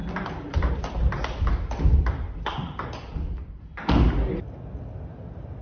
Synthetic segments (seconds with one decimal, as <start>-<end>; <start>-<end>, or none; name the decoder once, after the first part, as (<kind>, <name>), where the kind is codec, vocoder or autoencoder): none